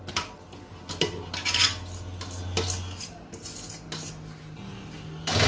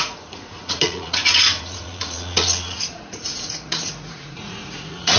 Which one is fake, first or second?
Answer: second